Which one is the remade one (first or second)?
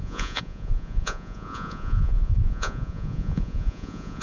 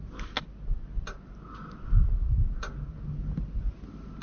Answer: first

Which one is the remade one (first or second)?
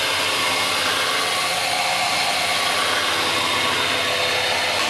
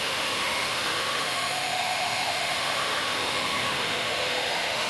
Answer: second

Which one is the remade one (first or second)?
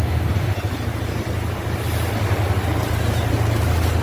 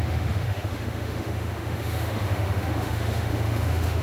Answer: second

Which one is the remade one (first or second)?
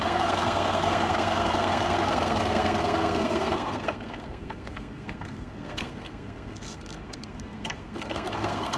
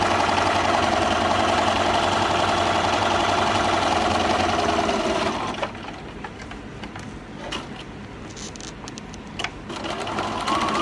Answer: first